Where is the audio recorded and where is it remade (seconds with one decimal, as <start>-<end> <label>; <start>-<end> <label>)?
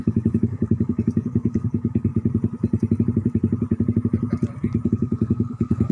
0.0-2.1 remade; 2.1-4.9 recorded; 4.9-5.9 remade